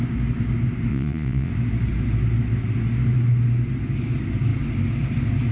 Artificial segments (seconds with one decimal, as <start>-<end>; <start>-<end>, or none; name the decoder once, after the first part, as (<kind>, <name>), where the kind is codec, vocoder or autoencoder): 0.9-1.5 (vocoder, Vocos)